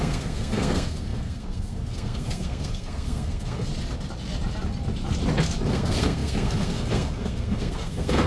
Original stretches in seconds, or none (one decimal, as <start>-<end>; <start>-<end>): 3.7-5.7